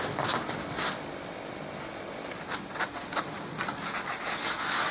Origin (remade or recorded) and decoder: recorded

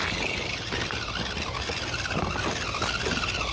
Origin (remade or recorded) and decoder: recorded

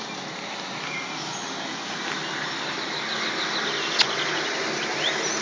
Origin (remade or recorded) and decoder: recorded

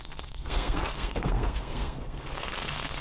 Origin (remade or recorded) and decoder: remade, codec, SNAC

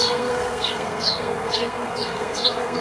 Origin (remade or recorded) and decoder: remade, codec, SNAC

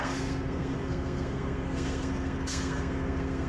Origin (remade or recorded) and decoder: remade, codec, SNAC